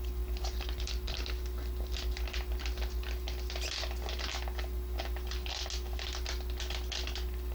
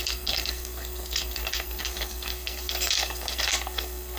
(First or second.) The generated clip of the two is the second